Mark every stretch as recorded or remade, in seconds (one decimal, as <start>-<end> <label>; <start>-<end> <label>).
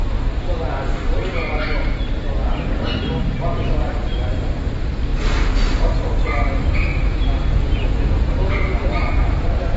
0.0-1.3 recorded; 1.3-2.0 remade; 2.0-7.0 recorded; 7.0-8.6 remade; 8.6-9.8 recorded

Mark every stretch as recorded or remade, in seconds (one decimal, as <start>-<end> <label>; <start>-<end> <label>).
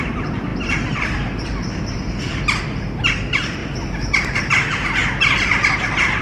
0.0-6.2 recorded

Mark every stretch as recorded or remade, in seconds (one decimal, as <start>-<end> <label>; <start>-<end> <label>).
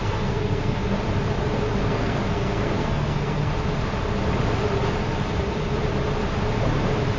0.0-0.8 remade; 0.8-1.8 recorded; 1.8-3.5 remade; 3.5-7.2 recorded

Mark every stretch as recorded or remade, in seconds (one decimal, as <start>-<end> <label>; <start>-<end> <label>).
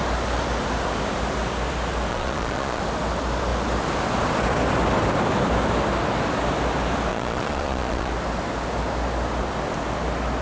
0.0-2.1 recorded; 2.1-2.8 remade; 2.8-7.1 recorded; 7.1-8.1 remade; 8.1-10.4 recorded